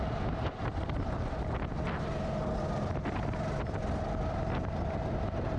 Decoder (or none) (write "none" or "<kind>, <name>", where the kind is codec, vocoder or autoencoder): none